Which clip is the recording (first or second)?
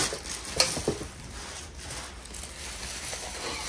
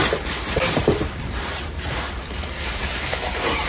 first